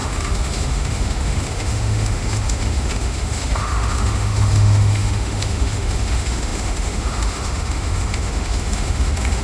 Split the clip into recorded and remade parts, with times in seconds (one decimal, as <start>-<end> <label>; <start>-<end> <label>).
0.0-9.4 remade